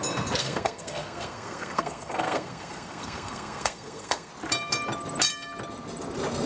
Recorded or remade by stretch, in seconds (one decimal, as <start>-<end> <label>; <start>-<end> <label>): 0.0-0.4 recorded; 0.4-4.3 remade; 4.3-6.5 recorded